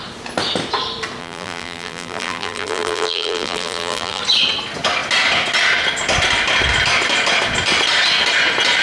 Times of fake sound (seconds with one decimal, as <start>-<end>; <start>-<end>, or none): 1.2-4.2